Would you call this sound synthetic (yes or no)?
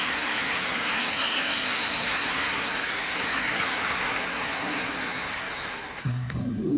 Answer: yes